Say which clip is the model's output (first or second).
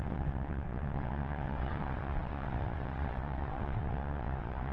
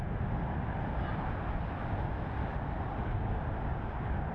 first